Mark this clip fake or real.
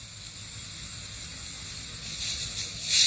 real